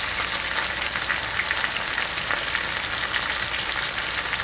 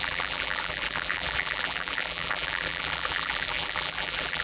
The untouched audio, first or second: first